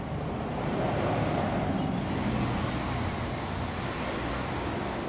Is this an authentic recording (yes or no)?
yes